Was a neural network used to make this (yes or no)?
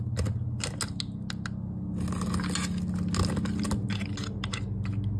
no